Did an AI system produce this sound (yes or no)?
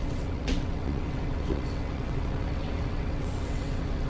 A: yes